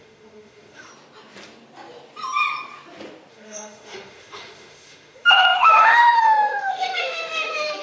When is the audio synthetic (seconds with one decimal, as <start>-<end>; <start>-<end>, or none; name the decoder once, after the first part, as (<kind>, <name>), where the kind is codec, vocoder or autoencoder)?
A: 0.0-0.9 (autoencoder, DAC-VAE); 3.3-7.8

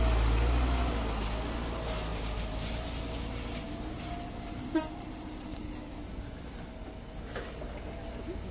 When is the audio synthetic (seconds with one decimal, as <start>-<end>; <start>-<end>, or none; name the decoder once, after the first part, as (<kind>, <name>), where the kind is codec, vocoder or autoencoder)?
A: 2.1-5.6 (vocoder, BigVGAN v2)

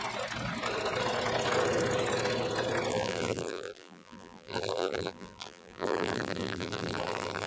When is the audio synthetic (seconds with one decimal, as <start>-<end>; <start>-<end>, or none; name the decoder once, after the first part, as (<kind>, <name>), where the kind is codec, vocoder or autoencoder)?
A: 2.9-7.5 (vocoder, BigVGAN v2)

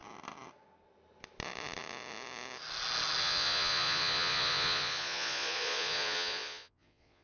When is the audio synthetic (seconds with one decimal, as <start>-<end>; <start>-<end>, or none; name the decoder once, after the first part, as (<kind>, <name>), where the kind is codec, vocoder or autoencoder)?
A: 3.2-7.2 (vocoder, Vocos)